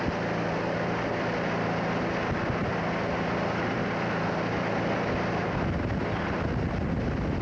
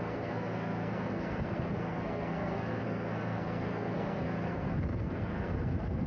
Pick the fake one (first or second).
second